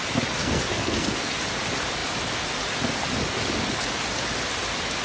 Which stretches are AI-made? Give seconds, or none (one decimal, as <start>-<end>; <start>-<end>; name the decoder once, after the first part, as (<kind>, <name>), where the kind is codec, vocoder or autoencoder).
0.4-1.3 (codec, SNAC)